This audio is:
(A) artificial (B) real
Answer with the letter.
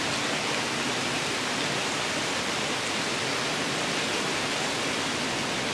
B